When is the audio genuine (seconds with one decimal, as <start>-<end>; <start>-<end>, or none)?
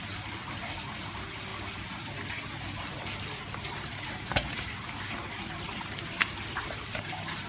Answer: 0.0-7.5